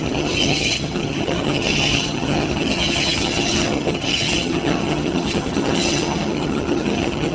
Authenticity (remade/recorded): remade